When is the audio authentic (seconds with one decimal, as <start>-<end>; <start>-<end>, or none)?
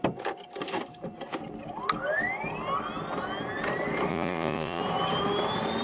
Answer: 0.0-4.1; 4.8-5.8